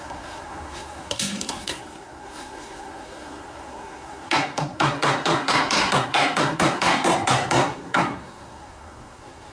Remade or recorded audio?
remade